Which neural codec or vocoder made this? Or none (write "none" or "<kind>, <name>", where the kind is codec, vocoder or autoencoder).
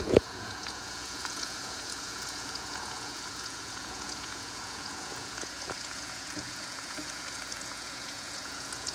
vocoder, Vocos